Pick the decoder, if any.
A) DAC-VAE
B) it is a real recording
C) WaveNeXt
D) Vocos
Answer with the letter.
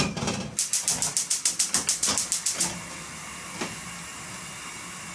B